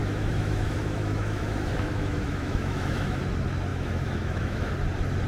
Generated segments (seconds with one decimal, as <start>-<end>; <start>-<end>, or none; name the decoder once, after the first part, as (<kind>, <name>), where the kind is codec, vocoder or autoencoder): 0.0-3.2 (autoencoder, DAC-VAE); 3.7-4.7